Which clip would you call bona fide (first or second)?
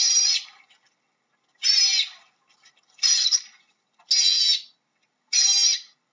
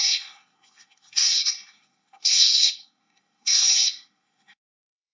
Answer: first